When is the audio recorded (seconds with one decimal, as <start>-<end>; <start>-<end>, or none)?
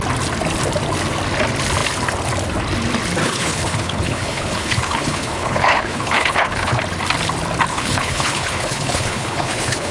0.0-3.2; 6.8-7.7